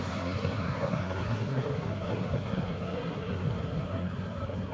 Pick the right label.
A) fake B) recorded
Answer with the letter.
A